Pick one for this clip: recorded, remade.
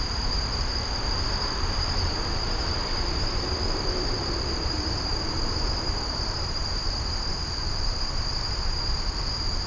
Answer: remade